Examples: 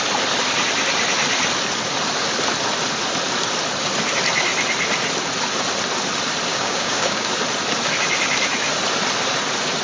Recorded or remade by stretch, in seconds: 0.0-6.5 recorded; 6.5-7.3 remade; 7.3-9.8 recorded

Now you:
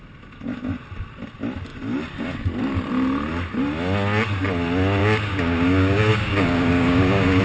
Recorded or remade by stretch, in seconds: 0.0-5.0 recorded; 5.0-7.4 remade